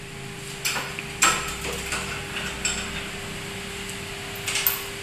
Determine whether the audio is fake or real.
real